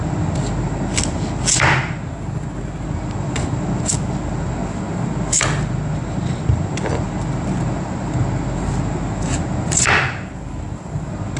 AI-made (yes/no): no